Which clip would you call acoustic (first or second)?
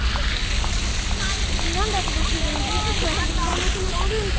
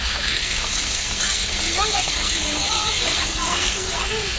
first